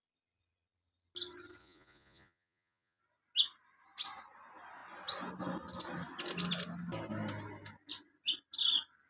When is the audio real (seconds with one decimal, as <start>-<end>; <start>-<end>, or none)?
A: 0.0-1.6; 3.0-9.1